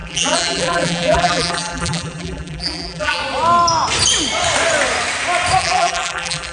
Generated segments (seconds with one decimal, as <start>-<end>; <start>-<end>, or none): 0.0-3.2; 5.6-6.5